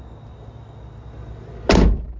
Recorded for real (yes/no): yes